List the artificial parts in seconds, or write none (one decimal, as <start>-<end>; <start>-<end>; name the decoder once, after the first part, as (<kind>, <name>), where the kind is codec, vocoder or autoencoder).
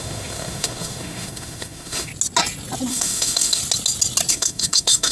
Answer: 0.0-2.1 (autoencoder, DAC-VAE); 2.9-3.6; 4.3-5.1